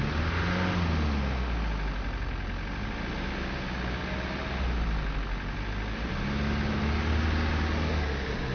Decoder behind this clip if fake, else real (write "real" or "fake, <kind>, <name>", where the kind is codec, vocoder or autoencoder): real